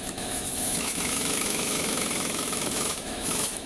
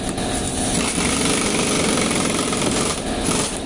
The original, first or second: second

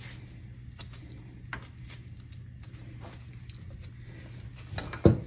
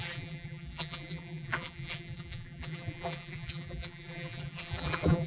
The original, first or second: first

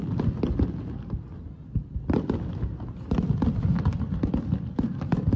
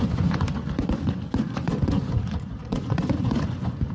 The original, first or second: first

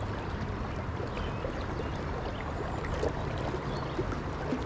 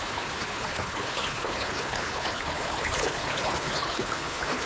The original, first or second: first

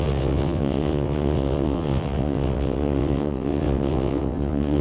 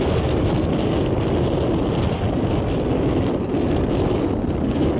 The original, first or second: second